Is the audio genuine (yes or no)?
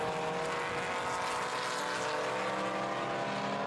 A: yes